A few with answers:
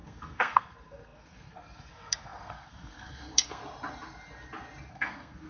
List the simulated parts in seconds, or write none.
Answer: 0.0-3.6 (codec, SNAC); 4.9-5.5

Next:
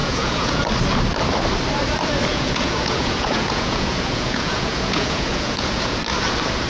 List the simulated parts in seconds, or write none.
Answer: 0.0-0.6 (vocoder, Vocos); 2.3-6.0

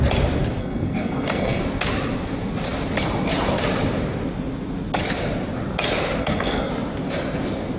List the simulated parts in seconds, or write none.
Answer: 0.6-1.6 (codec, SNAC); 6.2-6.7

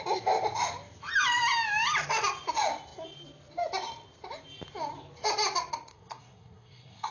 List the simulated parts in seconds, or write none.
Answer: 5.9-7.1 (codec, SNAC)

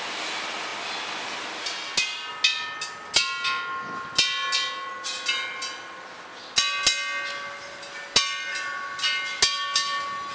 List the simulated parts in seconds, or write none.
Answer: none

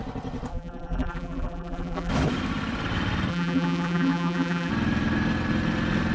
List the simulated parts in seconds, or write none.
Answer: 0.5-2.1 (vocoder, BigVGAN v2); 3.3-4.7

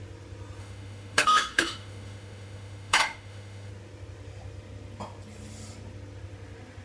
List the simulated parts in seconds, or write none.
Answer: 0.6-3.7 (autoencoder, DAC-VAE)

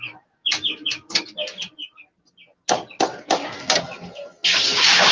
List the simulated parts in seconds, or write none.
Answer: none